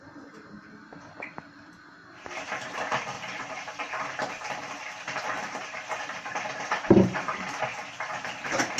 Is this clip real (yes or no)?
no